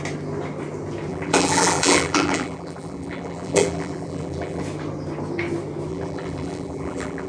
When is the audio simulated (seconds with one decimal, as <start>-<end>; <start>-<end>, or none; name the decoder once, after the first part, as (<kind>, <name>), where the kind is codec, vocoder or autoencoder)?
1.1-4.6 (vocoder, BigVGAN v2); 5.9-7.3